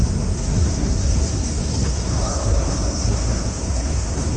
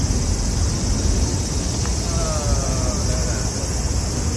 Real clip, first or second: second